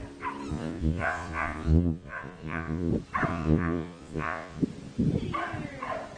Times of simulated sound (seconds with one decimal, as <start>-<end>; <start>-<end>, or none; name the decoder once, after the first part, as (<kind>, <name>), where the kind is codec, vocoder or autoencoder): 0.5-2.9 (vocoder, Vocos); 3.3-4.6